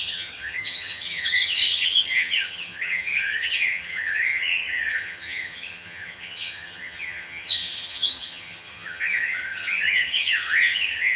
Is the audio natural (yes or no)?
no